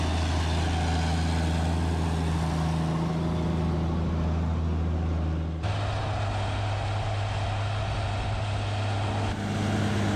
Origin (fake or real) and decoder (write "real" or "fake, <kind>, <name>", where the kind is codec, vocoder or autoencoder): real